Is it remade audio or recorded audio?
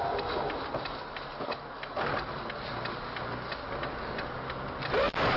recorded